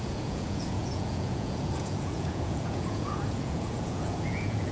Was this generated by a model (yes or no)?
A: yes